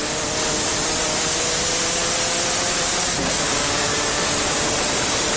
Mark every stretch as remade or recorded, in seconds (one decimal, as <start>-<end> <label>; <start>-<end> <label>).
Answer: 0.0-3.2 recorded; 3.2-3.9 remade; 3.9-5.4 recorded